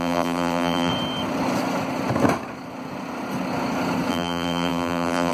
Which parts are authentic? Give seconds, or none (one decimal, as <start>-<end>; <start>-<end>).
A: 0.9-4.1